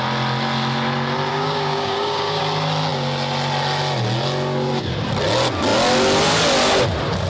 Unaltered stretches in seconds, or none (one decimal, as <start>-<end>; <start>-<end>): 0.0-1.3; 2.4-7.3